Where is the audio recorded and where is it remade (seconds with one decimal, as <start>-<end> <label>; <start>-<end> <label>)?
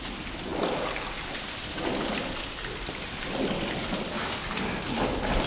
0.0-4.4 remade; 4.4-5.5 recorded